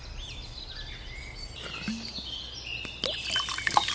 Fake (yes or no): yes